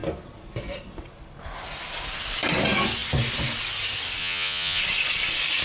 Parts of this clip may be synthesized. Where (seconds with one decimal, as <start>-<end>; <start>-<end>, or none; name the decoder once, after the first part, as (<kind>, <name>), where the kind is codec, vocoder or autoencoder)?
4.2-4.8 (vocoder, Vocos)